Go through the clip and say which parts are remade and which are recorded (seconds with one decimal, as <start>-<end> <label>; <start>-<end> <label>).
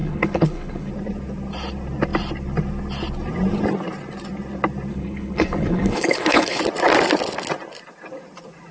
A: 0.0-0.9 remade; 0.9-4.9 recorded; 4.9-6.6 remade; 6.6-8.7 recorded